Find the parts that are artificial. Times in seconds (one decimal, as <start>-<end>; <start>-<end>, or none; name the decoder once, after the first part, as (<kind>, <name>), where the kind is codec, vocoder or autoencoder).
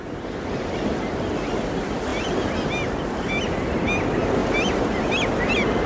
none